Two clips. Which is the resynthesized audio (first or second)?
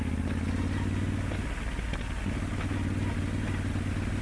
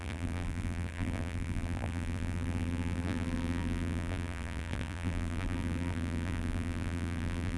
second